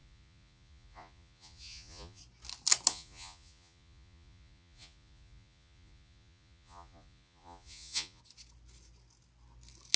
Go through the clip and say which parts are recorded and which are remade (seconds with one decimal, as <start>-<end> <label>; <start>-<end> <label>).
0.0-2.2 remade; 2.2-2.9 recorded; 2.9-8.2 remade; 8.2-10.0 recorded